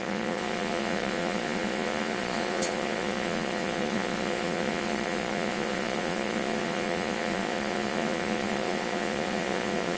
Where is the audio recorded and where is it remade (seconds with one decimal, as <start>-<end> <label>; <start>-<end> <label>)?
0.0-10.0 remade